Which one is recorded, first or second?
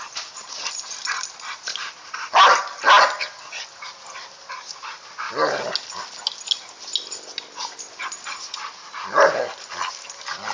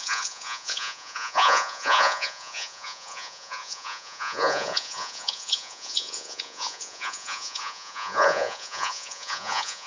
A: first